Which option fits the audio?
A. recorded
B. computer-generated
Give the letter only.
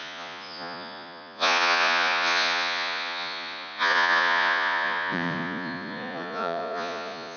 B